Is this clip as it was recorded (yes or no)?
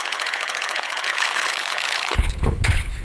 no